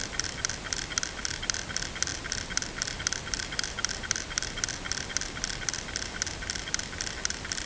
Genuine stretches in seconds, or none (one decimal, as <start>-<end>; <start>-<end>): 0.0-7.7